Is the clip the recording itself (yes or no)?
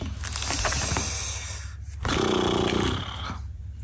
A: yes